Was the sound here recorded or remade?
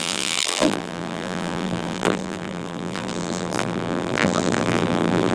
remade